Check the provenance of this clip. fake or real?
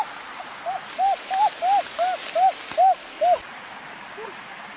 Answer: real